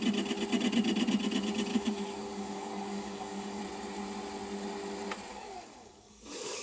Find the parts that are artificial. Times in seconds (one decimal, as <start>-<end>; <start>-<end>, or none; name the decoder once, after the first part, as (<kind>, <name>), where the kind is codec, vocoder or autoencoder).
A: 1.7-3.6 (codec, DAC); 5.3-6.6